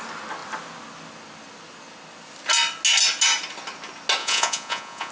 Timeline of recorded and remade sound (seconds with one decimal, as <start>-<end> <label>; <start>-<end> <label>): 0.0-4.2 recorded; 4.2-5.1 remade